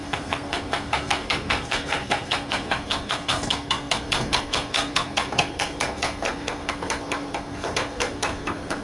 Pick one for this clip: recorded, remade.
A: remade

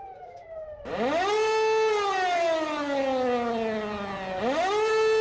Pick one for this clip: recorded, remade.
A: recorded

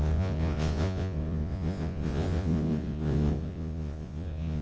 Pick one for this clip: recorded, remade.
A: remade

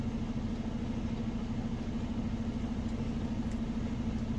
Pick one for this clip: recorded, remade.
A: recorded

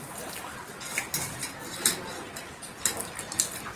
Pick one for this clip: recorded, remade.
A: recorded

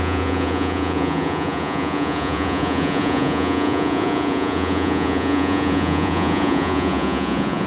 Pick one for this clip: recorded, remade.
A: remade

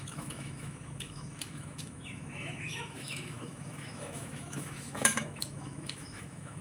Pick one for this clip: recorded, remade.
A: remade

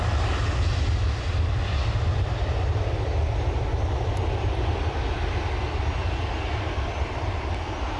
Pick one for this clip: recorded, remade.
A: recorded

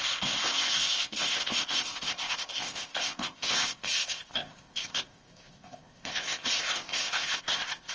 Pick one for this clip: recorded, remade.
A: remade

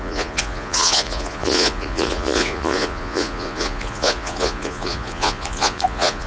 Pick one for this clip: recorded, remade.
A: remade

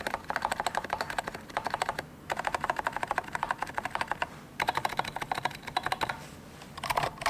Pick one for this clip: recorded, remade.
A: remade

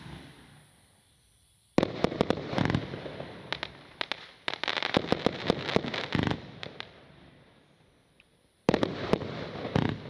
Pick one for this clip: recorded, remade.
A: remade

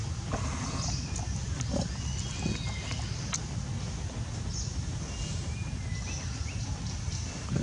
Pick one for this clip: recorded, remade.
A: recorded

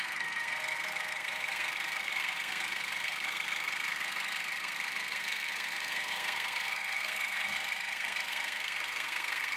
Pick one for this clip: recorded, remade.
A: remade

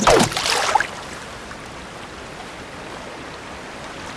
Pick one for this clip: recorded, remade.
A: recorded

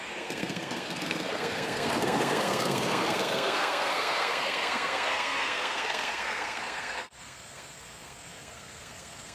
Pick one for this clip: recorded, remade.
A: remade